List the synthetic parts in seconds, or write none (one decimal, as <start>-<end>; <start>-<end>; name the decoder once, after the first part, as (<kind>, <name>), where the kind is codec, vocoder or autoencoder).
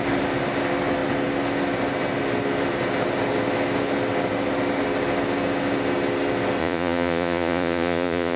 6.6-8.4 (vocoder, Vocos)